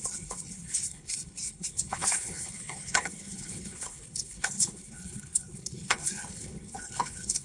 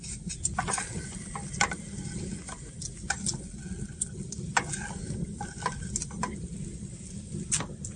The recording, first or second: second